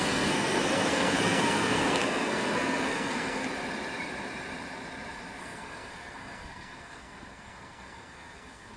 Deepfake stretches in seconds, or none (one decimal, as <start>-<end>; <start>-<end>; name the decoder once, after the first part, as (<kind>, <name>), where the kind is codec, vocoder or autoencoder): 0.0-3.4 (codec, SNAC); 5.4-8.8